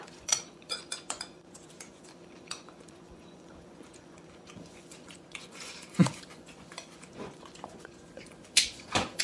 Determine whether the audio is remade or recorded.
remade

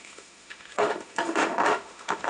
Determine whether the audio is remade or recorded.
remade